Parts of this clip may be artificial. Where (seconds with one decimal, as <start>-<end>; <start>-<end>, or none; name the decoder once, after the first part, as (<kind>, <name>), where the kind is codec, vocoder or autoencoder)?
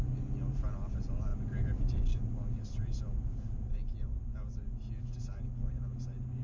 1.3-3.0 (vocoder, BigVGAN v2)